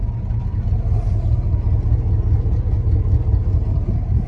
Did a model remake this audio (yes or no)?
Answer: no